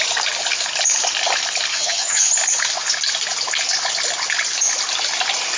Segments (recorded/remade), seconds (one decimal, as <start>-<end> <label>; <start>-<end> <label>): 0.0-1.7 recorded; 1.7-2.3 remade; 2.3-5.6 recorded